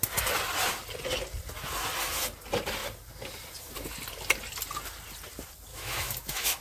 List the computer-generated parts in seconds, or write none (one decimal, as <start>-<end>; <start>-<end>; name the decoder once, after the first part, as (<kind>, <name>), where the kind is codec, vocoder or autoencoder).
5.7-6.6 (autoencoder, DAC-VAE)